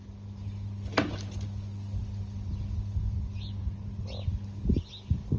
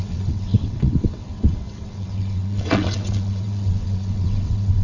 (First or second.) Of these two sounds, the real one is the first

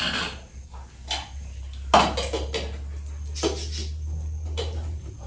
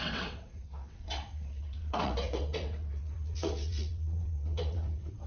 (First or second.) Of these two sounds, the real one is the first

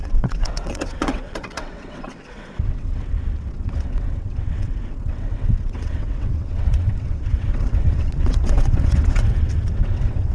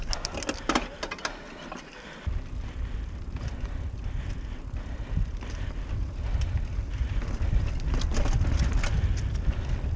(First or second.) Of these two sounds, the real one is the second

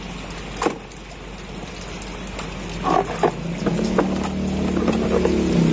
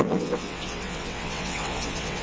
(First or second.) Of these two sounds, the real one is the first